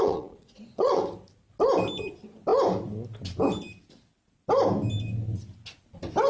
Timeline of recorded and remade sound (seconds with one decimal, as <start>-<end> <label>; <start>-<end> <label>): 0.0-1.0 remade; 1.0-6.3 recorded